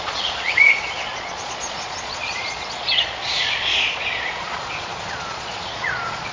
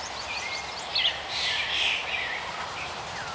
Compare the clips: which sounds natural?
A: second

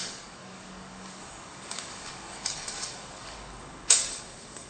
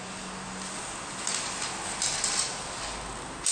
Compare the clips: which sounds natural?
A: second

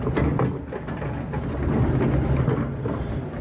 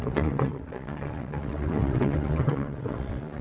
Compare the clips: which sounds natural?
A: first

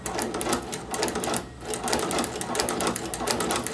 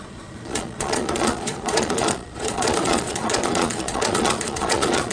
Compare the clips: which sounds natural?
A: first